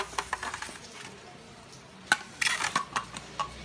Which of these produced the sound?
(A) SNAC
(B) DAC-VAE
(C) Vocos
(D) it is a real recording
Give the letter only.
D